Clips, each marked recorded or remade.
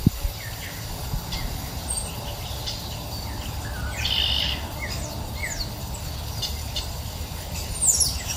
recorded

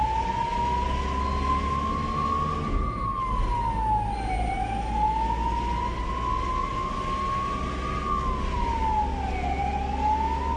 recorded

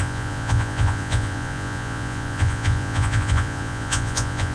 remade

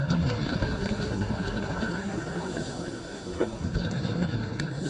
remade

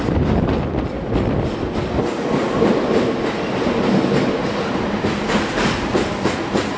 recorded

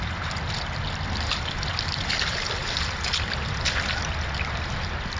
recorded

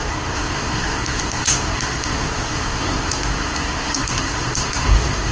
remade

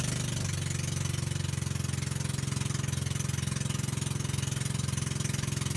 recorded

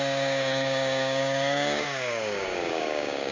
remade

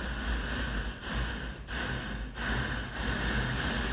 recorded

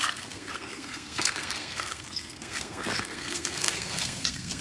remade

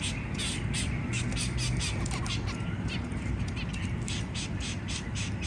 recorded